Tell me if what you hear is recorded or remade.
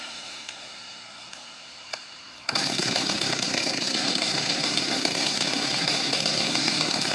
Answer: remade